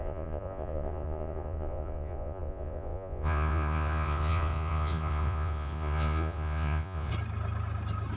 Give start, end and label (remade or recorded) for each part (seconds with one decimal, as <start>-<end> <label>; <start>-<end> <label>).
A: 0.0-7.1 remade; 7.1-8.2 recorded